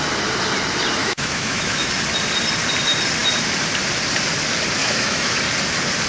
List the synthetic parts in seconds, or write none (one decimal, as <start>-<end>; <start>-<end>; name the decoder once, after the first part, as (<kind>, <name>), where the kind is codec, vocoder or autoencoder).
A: 1.0-1.9 (autoencoder, DAC-VAE); 4.8-5.4